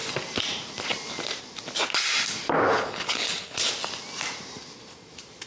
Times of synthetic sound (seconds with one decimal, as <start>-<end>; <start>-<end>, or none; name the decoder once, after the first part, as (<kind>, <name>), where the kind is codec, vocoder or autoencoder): 2.7-3.7 (codec, HILCodec)